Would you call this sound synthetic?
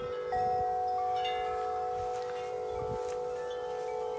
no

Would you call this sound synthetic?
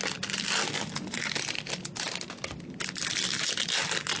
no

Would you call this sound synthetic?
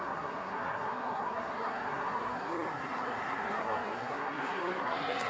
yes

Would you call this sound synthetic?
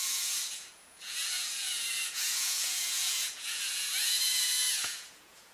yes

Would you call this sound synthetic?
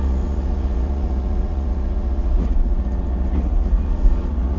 yes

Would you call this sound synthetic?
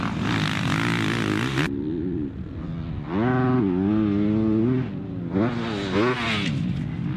no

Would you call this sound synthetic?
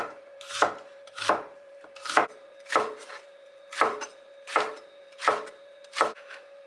yes